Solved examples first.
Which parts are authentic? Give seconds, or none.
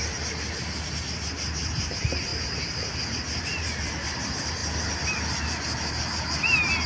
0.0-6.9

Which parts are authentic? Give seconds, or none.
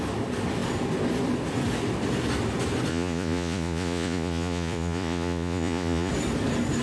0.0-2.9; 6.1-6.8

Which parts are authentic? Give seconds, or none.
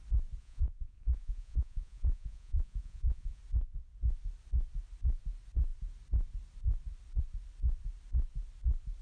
0.0-0.4; 3.4-9.0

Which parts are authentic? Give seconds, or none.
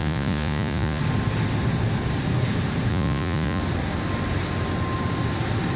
1.0-2.9; 3.6-5.8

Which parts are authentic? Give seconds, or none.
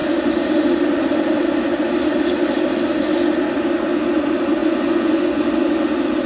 0.0-4.6; 5.4-6.3